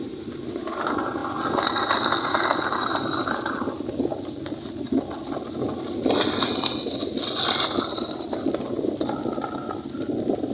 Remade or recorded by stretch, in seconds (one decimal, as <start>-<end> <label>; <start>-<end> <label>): 0.0-10.5 recorded